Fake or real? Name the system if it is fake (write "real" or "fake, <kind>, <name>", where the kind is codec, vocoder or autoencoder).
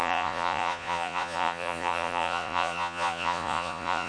fake, vocoder, Vocos